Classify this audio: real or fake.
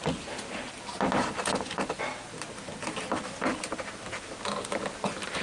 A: real